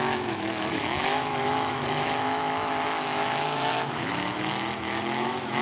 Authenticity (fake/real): fake